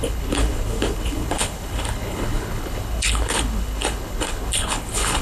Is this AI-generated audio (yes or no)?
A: yes